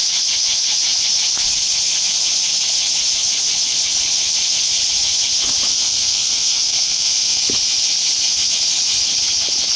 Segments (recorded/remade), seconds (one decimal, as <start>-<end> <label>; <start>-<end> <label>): 0.0-5.7 recorded; 5.7-7.4 remade; 7.4-9.8 recorded